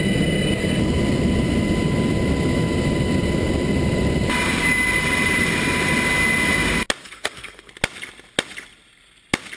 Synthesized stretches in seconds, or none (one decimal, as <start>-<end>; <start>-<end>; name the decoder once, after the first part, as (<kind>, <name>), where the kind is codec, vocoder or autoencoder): 7.0-7.7 (codec, SNAC)